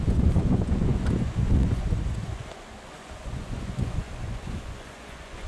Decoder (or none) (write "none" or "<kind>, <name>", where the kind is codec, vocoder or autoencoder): vocoder, Vocos